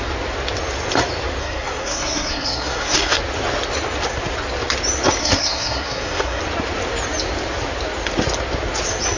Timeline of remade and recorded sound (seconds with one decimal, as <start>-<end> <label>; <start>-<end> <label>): 0.0-1.4 recorded; 1.4-3.2 remade; 3.2-5.2 recorded; 5.2-6.4 remade; 6.4-9.2 recorded